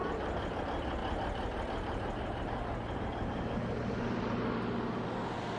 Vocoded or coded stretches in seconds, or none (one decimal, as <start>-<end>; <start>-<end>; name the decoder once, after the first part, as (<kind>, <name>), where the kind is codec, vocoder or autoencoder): 1.0-4.4 (vocoder, BigVGAN v2)